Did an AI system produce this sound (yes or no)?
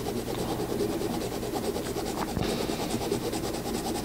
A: no